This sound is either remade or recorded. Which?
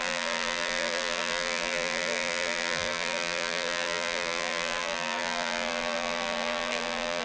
remade